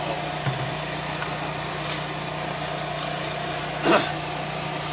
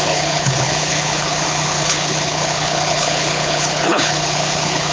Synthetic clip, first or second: second